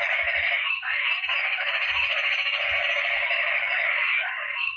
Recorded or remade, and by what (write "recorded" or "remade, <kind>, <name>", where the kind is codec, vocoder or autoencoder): remade, codec, DAC